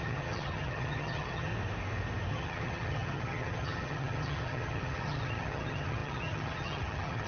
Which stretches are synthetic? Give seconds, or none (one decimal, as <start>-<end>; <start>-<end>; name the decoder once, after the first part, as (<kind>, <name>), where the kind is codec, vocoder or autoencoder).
0.0-1.5 (vocoder, HiFi-GAN); 2.3-7.3